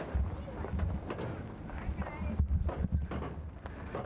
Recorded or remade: recorded